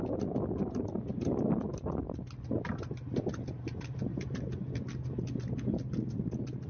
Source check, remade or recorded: recorded